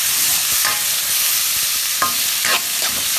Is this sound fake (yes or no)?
yes